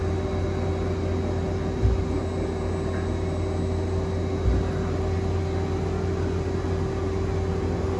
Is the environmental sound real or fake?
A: real